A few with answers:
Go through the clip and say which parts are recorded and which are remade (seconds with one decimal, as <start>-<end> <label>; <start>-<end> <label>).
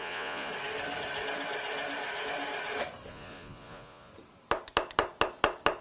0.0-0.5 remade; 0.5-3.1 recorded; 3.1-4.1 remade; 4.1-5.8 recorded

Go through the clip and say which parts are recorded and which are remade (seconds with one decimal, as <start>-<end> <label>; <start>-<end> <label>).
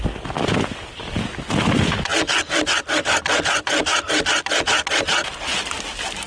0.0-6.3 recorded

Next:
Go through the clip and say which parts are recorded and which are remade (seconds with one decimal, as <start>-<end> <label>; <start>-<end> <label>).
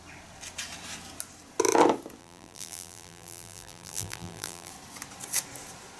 0.0-2.2 recorded; 2.2-4.7 remade; 4.7-6.0 recorded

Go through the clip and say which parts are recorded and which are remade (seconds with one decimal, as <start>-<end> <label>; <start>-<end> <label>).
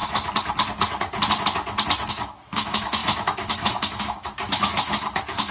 0.0-2.1 recorded; 2.1-5.5 remade